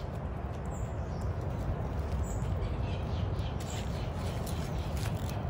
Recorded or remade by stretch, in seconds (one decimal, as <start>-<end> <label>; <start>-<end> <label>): 0.0-5.5 recorded